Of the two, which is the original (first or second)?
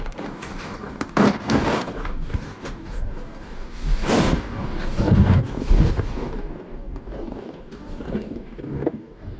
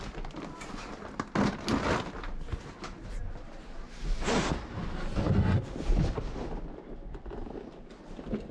second